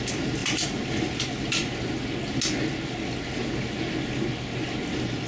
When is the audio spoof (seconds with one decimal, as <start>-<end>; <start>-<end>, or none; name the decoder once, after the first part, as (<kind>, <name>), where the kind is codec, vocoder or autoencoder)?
0.0-1.6 (vocoder, BigVGAN v2); 4.8-5.3